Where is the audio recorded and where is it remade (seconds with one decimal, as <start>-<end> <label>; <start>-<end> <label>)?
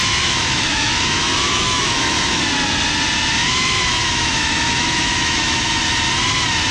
0.0-2.4 remade; 2.4-3.4 recorded; 3.4-5.8 remade; 5.8-6.7 recorded